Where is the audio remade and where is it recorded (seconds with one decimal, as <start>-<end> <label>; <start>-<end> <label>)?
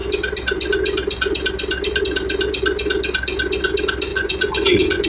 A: 0.0-4.1 recorded; 4.1-5.1 remade